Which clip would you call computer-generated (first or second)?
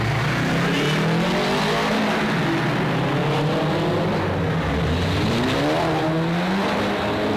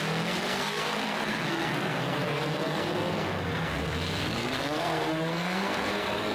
second